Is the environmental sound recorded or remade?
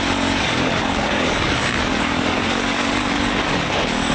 remade